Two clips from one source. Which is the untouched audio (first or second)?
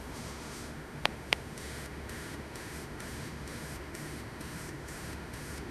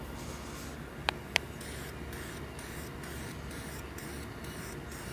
second